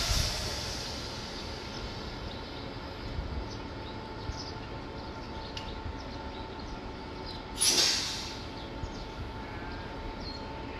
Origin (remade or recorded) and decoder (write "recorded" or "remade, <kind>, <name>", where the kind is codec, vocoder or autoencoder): recorded